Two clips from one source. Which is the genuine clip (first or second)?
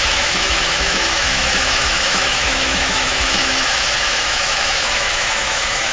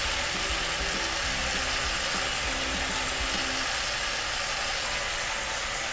second